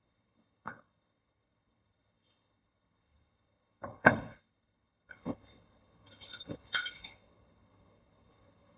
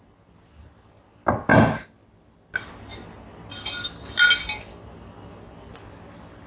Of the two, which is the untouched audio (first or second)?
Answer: second